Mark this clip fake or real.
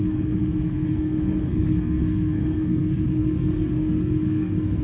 fake